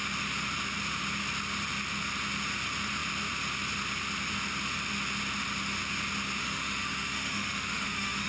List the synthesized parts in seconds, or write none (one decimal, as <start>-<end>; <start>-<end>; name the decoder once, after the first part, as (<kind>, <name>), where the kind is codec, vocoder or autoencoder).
6.4-8.3 (autoencoder, DAC-VAE)